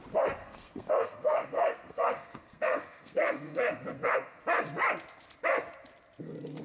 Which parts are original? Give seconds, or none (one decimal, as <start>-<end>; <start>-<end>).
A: 0.0-0.4; 4.4-6.6